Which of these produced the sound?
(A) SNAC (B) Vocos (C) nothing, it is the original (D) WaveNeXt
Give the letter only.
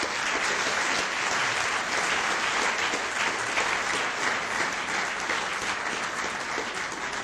C